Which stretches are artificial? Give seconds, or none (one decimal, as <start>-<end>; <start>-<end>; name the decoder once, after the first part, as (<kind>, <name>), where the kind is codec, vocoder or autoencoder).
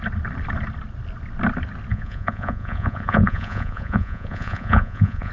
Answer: 1.9-5.3 (vocoder, Vocos)